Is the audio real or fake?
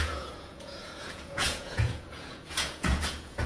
fake